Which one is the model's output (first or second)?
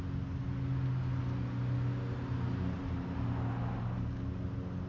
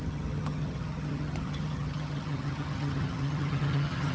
second